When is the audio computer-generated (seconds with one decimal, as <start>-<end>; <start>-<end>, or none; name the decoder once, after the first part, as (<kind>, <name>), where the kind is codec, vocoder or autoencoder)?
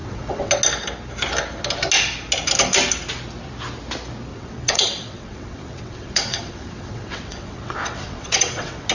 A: 0.0-0.5 (vocoder, WaveNeXt); 4.3-8.9